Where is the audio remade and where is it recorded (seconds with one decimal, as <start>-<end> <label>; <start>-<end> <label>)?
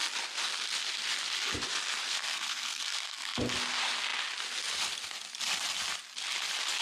0.0-2.1 recorded; 2.1-3.4 remade; 3.4-6.8 recorded